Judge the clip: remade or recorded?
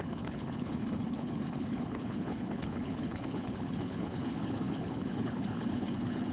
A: remade